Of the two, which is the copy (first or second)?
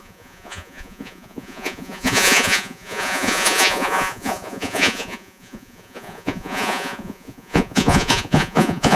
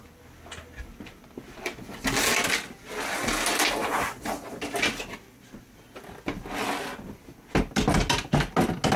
first